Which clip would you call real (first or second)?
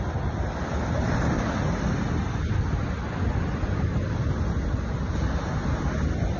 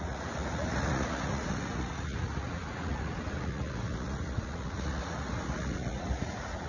first